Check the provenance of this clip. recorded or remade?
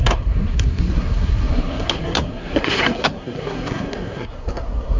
remade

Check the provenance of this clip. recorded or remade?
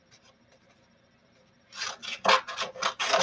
recorded